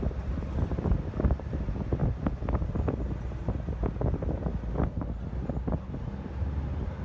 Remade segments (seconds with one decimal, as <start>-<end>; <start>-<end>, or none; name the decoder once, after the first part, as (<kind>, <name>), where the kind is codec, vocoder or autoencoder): none